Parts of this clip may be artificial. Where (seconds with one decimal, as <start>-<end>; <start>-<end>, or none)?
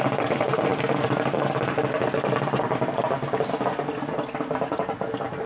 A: none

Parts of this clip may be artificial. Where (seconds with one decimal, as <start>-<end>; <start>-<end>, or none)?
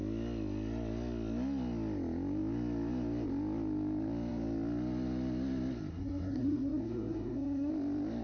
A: 5.9-7.7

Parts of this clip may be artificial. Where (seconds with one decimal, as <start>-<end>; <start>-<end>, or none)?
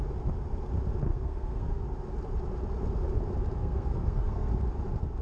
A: 1.1-1.8; 3.6-4.5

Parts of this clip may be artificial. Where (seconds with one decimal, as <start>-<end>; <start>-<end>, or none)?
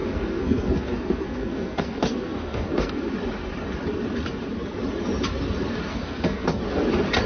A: 0.0-3.0; 5.9-6.6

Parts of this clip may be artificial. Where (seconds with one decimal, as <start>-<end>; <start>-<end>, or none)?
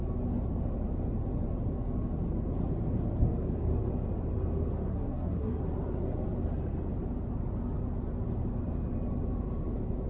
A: 4.9-5.6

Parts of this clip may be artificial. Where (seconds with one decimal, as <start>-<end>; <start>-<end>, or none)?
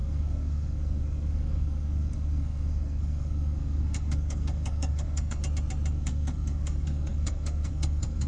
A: 0.0-5.4; 5.9-8.3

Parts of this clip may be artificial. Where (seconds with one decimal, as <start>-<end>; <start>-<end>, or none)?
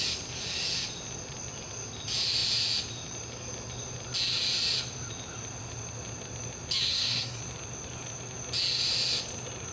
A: 6.9-7.4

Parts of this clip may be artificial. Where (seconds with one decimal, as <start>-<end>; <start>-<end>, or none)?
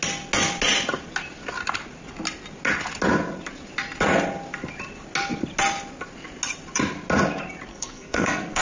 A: 7.7-8.6